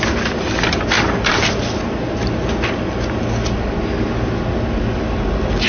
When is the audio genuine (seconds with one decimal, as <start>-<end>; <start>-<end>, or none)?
0.0-5.7